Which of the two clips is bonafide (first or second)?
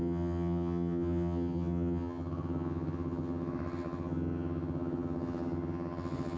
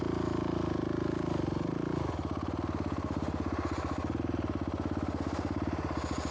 second